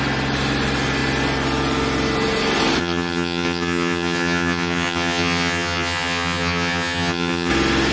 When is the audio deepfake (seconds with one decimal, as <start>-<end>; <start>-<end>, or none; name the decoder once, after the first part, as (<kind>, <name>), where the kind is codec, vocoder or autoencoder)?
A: 2.8-7.5 (vocoder, HiFi-GAN)